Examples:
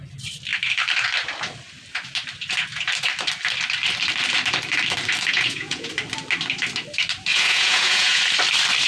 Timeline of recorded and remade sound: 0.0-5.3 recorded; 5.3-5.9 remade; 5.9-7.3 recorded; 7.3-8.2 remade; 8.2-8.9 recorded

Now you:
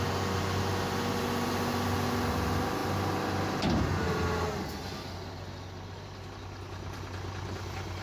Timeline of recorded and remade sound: 0.0-8.0 recorded